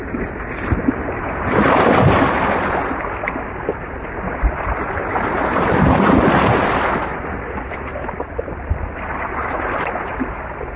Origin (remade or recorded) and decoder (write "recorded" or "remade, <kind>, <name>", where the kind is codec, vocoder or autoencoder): recorded